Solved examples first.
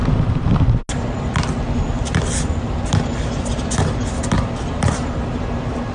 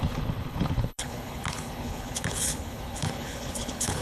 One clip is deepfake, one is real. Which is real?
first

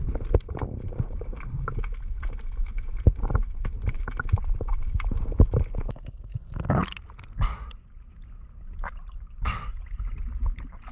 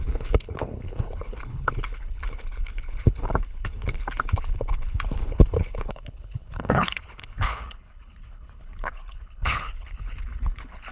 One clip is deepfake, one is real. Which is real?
first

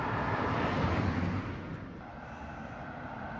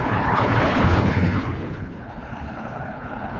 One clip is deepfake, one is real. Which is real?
first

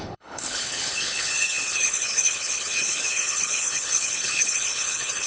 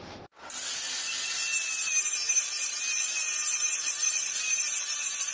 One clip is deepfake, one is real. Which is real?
second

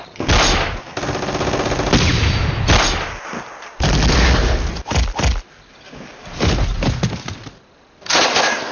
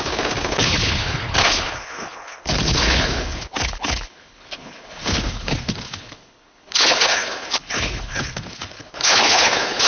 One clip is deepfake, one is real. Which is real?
first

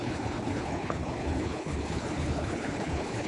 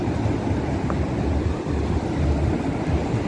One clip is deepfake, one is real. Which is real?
second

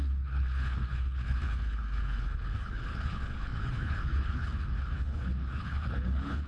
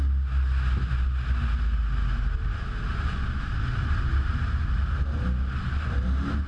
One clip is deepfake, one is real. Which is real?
second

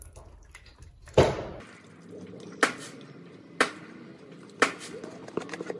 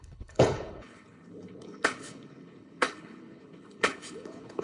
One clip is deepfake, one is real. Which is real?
first